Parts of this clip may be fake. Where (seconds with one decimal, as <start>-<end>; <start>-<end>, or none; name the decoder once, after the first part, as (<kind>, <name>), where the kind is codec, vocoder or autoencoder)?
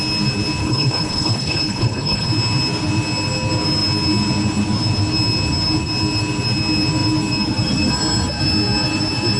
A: 0.6-2.3 (codec, HILCodec)